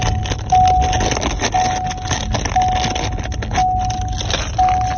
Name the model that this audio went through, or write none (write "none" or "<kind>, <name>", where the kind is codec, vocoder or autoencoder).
none